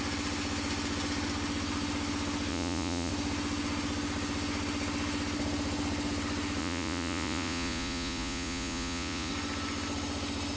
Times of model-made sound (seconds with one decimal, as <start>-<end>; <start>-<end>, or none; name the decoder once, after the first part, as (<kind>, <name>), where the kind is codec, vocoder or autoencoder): 2.5-3.1 (vocoder, Vocos); 6.6-9.3